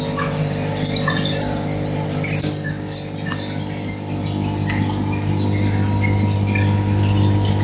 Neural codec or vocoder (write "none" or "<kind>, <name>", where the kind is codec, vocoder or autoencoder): none